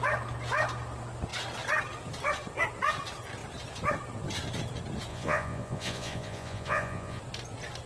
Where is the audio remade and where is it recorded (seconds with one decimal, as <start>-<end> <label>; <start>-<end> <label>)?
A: 0.0-5.1 recorded; 5.1-7.2 remade; 7.2-7.9 recorded